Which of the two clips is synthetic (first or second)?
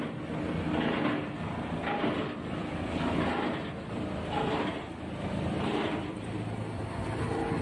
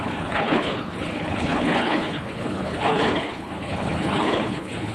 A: second